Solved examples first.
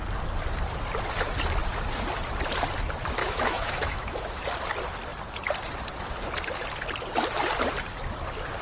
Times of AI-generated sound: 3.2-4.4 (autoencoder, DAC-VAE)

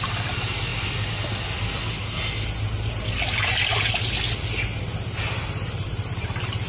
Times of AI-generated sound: none

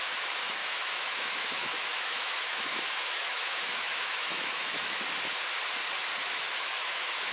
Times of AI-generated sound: 0.6-5.0 (autoencoder, DAC-VAE); 6.2-7.3

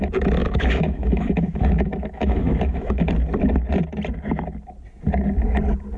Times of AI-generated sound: 0.4-3.1 (autoencoder, DAC-VAE)

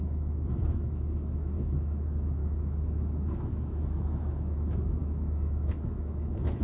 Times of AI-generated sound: 0.0-6.6 (autoencoder, DAC-VAE)